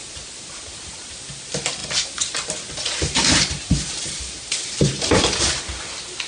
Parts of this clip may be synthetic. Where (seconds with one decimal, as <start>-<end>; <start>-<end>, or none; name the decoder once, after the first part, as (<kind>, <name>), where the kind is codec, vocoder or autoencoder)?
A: 0.0-1.1 (vocoder, BigVGAN v2); 1.8-5.6